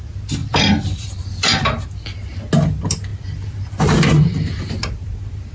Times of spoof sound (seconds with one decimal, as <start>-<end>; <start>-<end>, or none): 0.4-1.9; 3.1-4.7